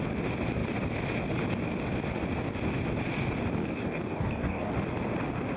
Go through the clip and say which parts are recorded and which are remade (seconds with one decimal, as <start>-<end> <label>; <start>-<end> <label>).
0.0-3.6 recorded; 3.6-4.7 remade; 4.7-5.6 recorded